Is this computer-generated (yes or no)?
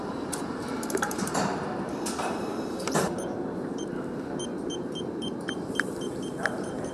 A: yes